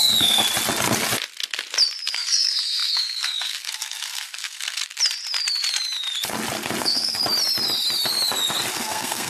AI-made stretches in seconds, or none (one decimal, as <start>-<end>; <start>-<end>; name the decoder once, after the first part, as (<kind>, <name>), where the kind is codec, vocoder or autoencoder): 0.0-0.4 (codec, SNAC); 2.1-4.8; 6.8-7.2; 8.7-9.3